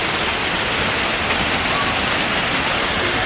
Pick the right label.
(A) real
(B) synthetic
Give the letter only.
A